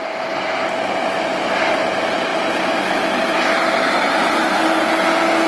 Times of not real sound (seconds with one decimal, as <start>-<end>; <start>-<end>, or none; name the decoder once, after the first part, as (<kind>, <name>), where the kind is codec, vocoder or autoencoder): none